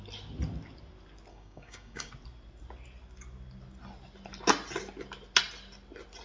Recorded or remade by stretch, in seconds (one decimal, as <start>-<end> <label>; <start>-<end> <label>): 0.0-1.3 recorded; 1.3-2.1 remade; 2.1-6.2 recorded